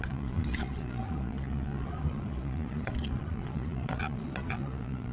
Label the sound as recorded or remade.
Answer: remade